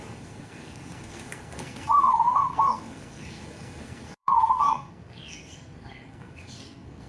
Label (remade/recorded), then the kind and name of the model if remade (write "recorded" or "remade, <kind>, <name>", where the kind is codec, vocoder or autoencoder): remade, codec, SNAC